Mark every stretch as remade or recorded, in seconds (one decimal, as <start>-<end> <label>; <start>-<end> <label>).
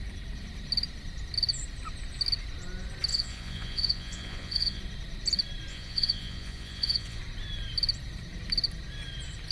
0.0-3.1 recorded; 3.1-4.8 remade; 4.8-5.7 recorded; 5.7-7.2 remade; 7.2-9.5 recorded